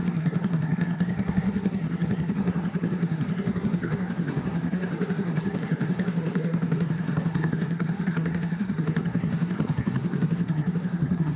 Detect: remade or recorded remade